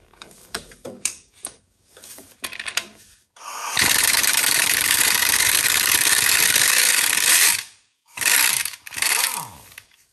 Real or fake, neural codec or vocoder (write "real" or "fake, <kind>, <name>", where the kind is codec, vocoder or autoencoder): fake, codec, DAC